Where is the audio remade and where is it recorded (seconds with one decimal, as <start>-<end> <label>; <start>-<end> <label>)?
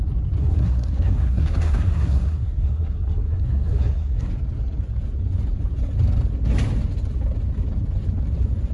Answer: 0.0-0.4 recorded; 0.4-4.3 remade; 4.3-8.7 recorded